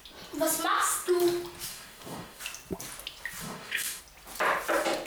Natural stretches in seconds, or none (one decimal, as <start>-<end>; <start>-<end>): 0.0-1.7; 2.4-3.4; 4.0-5.1